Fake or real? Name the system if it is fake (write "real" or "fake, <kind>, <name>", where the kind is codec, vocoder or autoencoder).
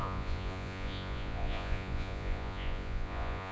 fake, vocoder, Vocos